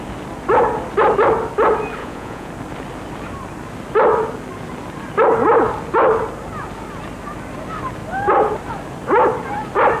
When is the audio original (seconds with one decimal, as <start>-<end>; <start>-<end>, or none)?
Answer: 0.0-2.0; 2.5-10.0